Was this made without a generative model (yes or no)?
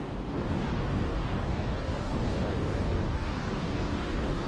no